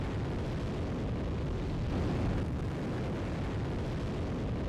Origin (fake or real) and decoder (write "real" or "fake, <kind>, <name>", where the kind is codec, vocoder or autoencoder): real